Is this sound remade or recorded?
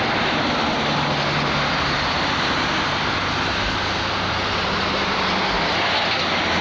recorded